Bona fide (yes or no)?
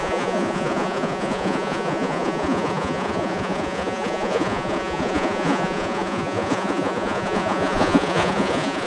no